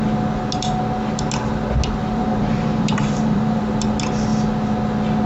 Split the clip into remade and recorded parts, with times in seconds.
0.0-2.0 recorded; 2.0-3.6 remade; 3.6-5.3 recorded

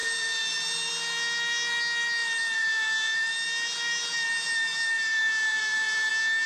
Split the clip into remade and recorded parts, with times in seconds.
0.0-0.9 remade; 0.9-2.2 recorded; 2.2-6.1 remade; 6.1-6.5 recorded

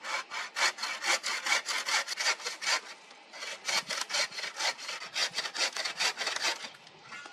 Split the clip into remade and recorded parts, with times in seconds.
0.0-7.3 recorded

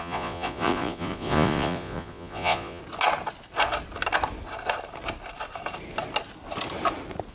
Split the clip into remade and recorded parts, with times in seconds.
0.0-2.8 remade; 2.8-7.3 recorded

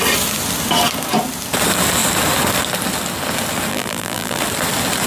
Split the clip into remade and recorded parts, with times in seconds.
0.0-3.7 recorded; 3.7-4.4 remade; 4.4-5.1 recorded